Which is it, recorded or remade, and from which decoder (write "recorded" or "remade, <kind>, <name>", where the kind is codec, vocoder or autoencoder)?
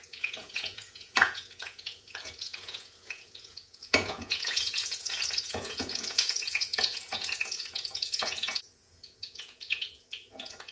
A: remade, vocoder, Vocos